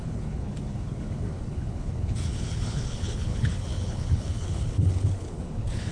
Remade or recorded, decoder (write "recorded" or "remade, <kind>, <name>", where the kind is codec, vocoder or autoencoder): remade, codec, HILCodec